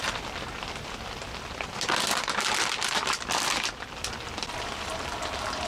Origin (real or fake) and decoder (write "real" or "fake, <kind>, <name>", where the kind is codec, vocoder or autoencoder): fake, vocoder, BigVGAN v2